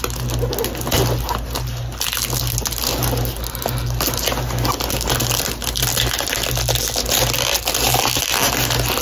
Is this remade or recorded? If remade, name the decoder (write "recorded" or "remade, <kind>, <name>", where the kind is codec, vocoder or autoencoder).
recorded